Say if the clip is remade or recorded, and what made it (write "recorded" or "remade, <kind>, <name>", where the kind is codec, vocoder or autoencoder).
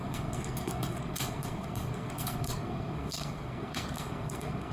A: remade, codec, SNAC